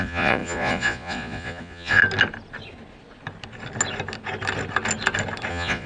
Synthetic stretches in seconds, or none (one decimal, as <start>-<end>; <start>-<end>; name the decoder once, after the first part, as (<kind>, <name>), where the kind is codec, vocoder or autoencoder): 0.0-2.0 (vocoder, Vocos); 5.5-5.9